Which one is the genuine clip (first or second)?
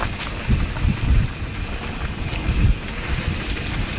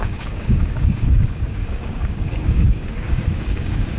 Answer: first